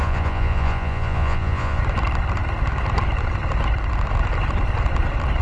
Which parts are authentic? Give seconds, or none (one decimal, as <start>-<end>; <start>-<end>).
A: 1.8-5.4